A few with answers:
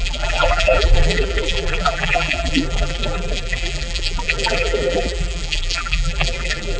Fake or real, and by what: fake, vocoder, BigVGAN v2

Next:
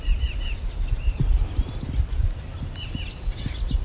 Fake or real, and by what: real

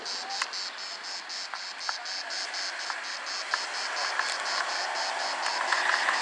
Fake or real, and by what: real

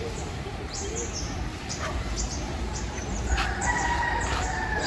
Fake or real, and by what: fake, vocoder, BigVGAN v2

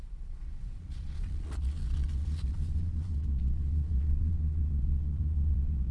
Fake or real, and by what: fake, vocoder, Vocos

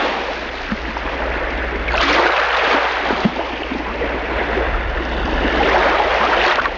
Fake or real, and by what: real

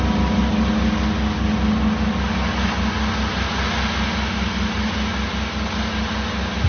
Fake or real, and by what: real